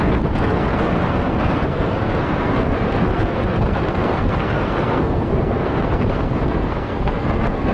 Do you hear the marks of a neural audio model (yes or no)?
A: yes